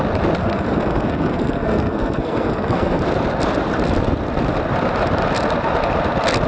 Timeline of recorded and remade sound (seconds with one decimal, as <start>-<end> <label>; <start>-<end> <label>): 0.0-0.4 recorded; 0.4-3.0 remade; 3.0-6.5 recorded